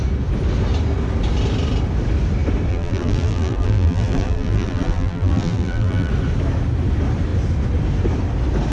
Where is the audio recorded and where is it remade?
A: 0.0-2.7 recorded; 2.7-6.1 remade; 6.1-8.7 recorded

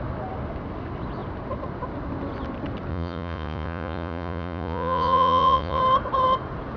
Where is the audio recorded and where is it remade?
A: 0.0-2.9 recorded; 2.9-5.8 remade; 5.8-6.8 recorded

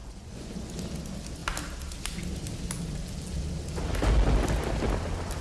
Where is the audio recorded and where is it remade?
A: 0.0-0.5 remade; 0.5-5.4 recorded